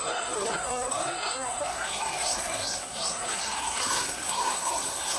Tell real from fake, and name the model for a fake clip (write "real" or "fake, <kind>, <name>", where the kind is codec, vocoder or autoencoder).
fake, codec, SNAC